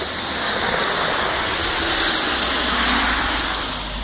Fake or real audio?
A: real